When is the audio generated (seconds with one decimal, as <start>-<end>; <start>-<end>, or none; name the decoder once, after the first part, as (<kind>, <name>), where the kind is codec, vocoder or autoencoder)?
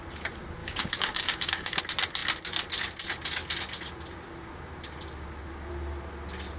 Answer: 0.6-1.8 (codec, DAC)